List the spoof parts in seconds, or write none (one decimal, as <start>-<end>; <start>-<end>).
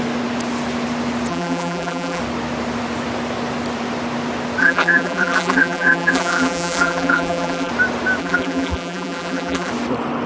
1.3-2.2; 4.6-7.7; 8.2-9.7